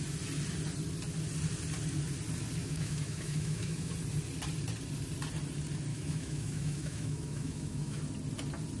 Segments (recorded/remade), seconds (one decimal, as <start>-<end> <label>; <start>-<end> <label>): 0.0-2.6 recorded; 2.6-3.9 remade; 3.9-5.9 recorded; 5.9-8.0 remade; 8.0-8.8 recorded